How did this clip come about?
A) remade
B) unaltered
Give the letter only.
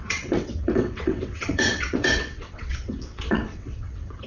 A